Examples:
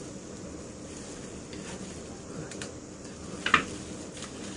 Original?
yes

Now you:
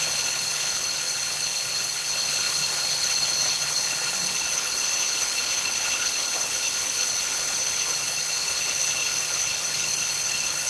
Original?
no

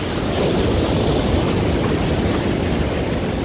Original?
yes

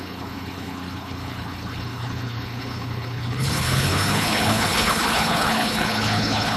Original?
no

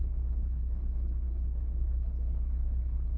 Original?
no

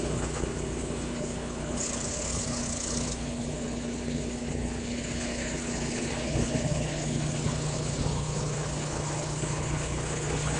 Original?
no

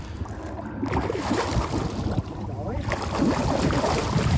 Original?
yes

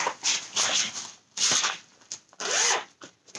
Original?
yes